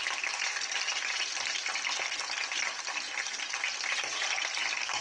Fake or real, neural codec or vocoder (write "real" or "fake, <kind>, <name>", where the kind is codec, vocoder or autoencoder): real